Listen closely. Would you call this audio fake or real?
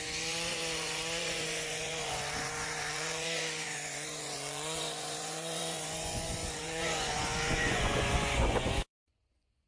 fake